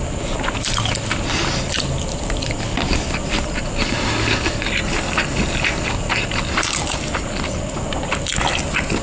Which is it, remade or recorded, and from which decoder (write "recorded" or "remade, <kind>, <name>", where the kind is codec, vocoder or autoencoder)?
recorded